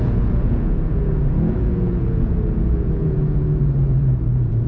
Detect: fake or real fake